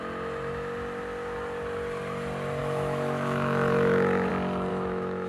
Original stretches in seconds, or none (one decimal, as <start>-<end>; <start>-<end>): 0.0-2.6; 4.3-4.7